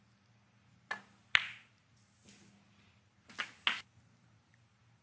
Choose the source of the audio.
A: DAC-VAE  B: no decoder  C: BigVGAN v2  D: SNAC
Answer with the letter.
B